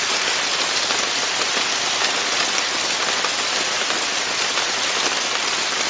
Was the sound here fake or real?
real